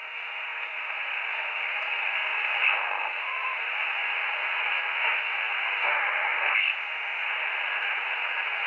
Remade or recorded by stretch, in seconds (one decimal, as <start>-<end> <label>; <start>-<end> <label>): 0.0-8.7 remade